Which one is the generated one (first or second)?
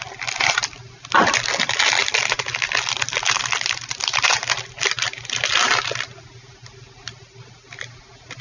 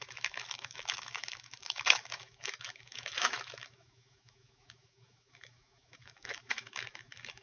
second